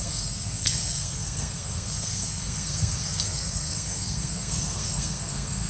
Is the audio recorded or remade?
remade